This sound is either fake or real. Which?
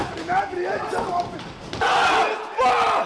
real